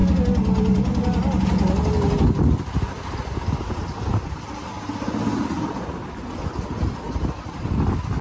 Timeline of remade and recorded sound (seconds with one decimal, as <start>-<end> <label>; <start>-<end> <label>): 0.0-8.2 recorded